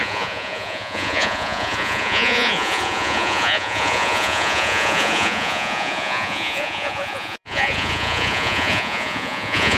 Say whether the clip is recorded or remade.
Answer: remade